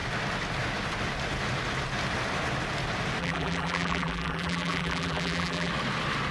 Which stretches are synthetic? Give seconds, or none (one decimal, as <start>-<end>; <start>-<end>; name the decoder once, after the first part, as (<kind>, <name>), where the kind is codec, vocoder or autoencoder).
3.2-5.7 (vocoder, BigVGAN v2)